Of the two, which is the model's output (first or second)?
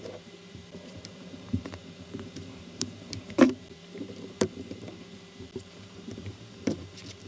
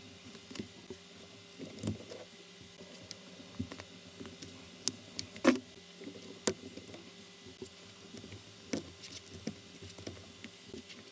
first